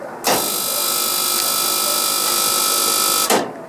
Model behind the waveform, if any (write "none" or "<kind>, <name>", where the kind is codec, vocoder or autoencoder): none